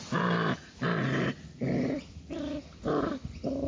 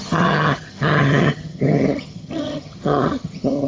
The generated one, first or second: second